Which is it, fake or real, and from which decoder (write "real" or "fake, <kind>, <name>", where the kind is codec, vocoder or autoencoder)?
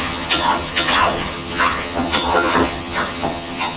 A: fake, vocoder, HiFi-GAN